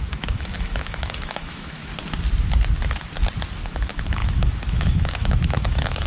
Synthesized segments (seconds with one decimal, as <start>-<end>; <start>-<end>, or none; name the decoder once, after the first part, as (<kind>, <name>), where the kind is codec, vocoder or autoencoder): 0.0-1.9 (autoencoder, DAC-VAE); 3.6-6.1